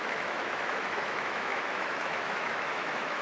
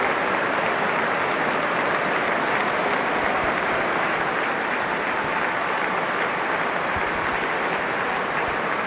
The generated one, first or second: first